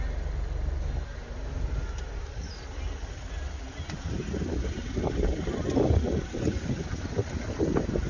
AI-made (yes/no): no